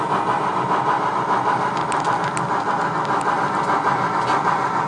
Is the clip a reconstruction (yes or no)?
no